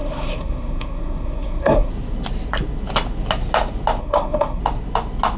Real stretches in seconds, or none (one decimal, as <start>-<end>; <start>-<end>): 1.9-4.0; 4.6-5.4